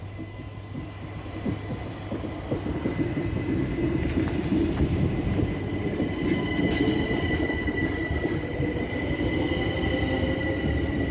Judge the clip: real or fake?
real